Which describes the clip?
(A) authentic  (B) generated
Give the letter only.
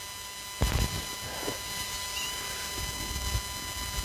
A